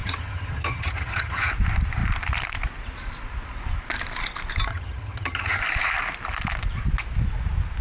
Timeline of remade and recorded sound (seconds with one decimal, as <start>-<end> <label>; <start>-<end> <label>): 0.0-1.5 remade; 1.5-4.7 recorded; 4.7-5.6 remade; 5.6-7.8 recorded

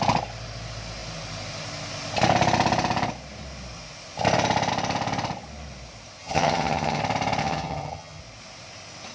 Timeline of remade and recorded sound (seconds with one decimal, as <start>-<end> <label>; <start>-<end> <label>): 0.0-6.2 recorded; 6.2-7.0 remade; 7.0-7.4 recorded; 7.4-8.2 remade; 8.2-9.1 recorded

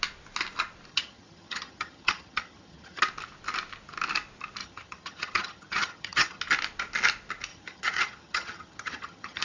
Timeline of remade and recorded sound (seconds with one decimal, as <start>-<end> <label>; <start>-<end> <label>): 0.0-0.9 recorded; 0.9-3.0 remade; 3.0-4.6 recorded; 4.6-6.4 remade; 6.4-7.5 recorded; 7.5-9.4 remade

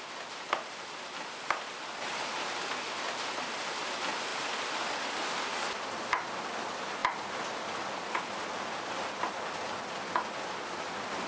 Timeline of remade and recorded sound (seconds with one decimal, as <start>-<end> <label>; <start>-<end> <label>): 0.0-11.3 recorded

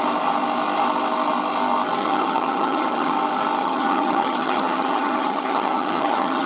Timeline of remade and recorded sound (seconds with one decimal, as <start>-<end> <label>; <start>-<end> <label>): 0.0-2.0 recorded; 2.0-3.1 remade; 3.1-3.6 recorded; 3.6-6.5 remade

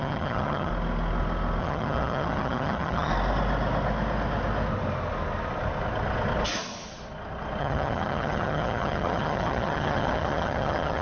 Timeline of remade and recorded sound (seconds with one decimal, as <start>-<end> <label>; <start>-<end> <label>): 0.0-0.7 remade; 0.7-1.6 recorded; 1.6-3.1 remade; 3.1-7.6 recorded; 7.6-11.0 remade

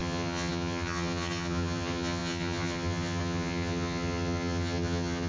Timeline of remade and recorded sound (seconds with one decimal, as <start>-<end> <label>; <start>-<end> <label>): 0.0-5.3 remade